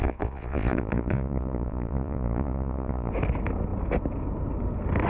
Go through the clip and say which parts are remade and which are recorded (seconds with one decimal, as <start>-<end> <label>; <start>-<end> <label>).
0.0-3.1 remade; 3.1-5.1 recorded